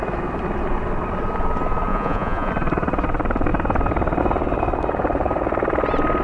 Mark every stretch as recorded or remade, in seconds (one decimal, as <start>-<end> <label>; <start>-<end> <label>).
0.0-1.9 recorded; 1.9-2.5 remade; 2.5-6.2 recorded